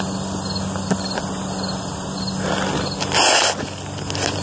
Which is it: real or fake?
real